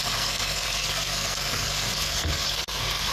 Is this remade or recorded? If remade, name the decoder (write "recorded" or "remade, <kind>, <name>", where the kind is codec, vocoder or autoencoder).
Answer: remade, codec, SNAC